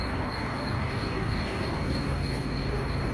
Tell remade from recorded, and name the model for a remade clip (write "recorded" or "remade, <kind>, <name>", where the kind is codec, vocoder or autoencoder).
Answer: remade, codec, DAC